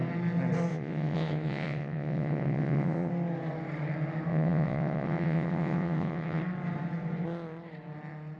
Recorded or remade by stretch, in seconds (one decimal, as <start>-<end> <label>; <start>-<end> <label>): 0.0-0.7 recorded; 0.7-3.1 remade; 3.1-4.3 recorded; 4.3-6.4 remade; 6.4-8.4 recorded